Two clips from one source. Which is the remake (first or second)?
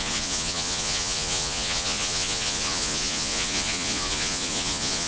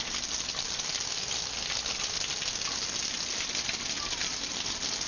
first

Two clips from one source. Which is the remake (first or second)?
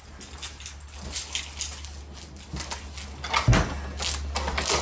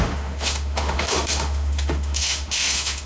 second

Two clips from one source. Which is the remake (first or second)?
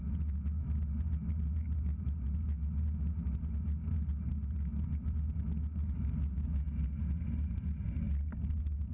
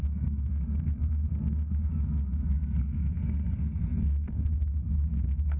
second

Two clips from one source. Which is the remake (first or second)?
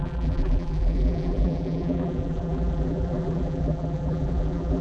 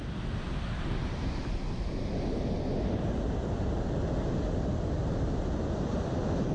first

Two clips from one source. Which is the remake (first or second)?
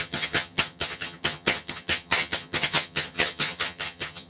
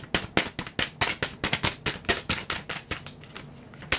first